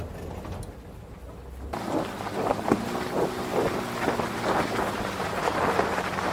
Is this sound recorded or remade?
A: recorded